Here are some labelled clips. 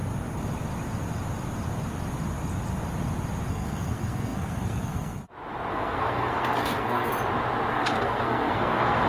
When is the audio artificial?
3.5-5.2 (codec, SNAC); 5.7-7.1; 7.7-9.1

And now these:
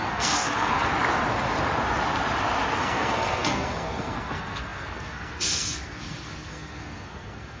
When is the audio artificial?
0.0-0.9 (codec, SNAC); 2.8-7.6

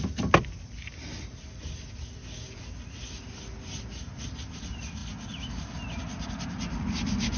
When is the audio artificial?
none

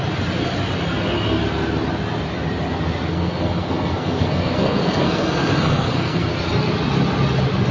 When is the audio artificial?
3.1-6.3 (codec, SNAC)